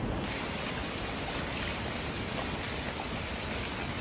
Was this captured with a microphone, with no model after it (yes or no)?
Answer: yes